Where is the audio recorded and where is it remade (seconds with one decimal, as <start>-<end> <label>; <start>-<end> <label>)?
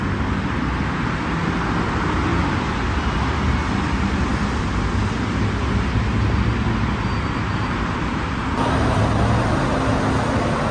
0.0-7.5 recorded; 7.5-9.0 remade; 9.0-10.7 recorded